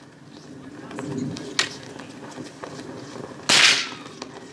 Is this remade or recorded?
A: recorded